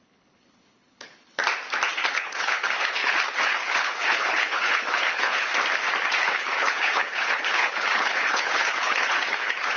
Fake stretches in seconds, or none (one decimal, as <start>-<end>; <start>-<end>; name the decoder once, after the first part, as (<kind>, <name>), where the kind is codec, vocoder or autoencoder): 0.0-1.4 (codec, HILCodec); 1.9-5.5; 6.2-9.8